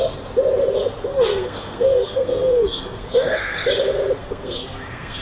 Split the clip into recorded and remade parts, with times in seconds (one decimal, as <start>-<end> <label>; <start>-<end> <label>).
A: 0.0-1.1 recorded; 1.1-3.7 remade; 3.7-4.2 recorded; 4.2-5.2 remade